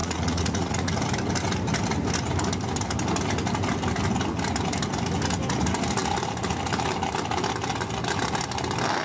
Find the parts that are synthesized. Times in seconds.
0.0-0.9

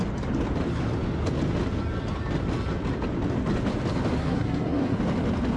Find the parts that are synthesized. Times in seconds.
4.2-5.0

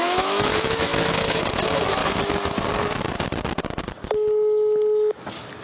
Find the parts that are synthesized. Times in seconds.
0.0-2.0

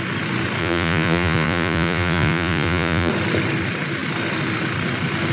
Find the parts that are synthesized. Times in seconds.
0.6-3.1